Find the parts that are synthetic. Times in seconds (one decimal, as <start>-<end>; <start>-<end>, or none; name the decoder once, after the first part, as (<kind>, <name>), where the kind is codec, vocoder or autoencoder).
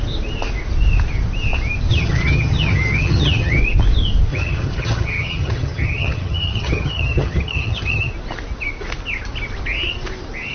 1.9-3.6 (vocoder, HiFi-GAN); 4.3-8.1